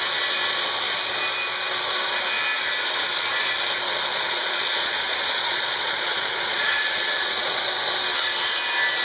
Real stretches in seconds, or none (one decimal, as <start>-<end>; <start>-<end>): 0.0-4.1; 7.7-9.0